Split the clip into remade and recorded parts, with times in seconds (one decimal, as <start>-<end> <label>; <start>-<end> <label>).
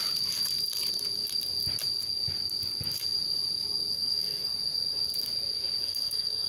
0.0-3.9 recorded; 3.9-4.5 remade; 4.5-5.8 recorded; 5.8-6.5 remade